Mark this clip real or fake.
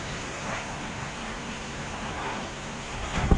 fake